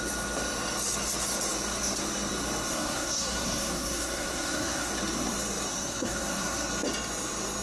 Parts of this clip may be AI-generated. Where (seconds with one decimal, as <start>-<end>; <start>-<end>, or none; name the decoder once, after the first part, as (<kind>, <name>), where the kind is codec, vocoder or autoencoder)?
2.7-4.9 (codec, SNAC); 5.7-6.7